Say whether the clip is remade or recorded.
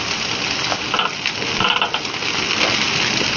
recorded